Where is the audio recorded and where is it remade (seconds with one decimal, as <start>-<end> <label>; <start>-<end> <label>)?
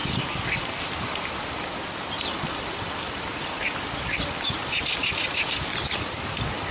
0.0-1.3 remade; 1.3-6.7 recorded